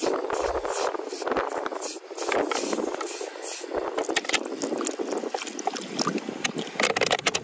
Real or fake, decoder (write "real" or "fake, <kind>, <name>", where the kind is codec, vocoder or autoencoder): real